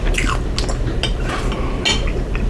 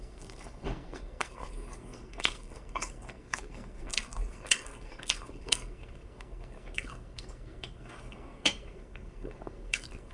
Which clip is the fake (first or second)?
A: second